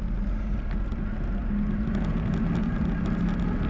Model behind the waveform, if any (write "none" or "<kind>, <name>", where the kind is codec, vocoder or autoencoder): none